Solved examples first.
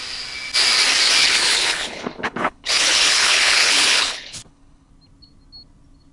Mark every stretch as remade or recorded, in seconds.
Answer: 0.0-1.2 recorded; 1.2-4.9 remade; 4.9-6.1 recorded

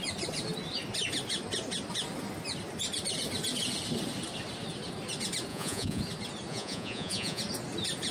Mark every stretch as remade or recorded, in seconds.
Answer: 0.0-5.5 recorded; 5.5-6.0 remade; 6.0-6.5 recorded; 6.5-7.4 remade; 7.4-8.1 recorded

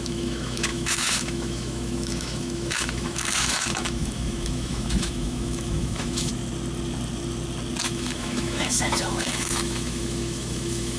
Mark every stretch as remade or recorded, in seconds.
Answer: 0.0-6.3 remade; 6.3-7.8 recorded; 7.8-11.0 remade

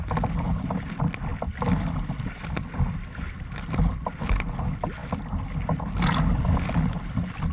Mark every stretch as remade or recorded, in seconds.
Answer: 0.0-7.5 recorded

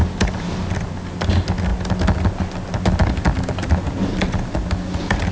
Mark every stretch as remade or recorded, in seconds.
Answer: 0.0-0.5 remade; 0.5-5.3 recorded

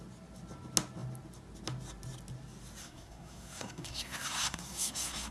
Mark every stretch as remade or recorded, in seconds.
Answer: 0.0-2.8 recorded; 2.8-5.3 remade